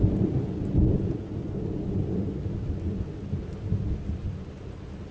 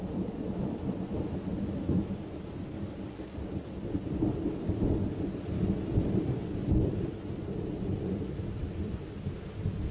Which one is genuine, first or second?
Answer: first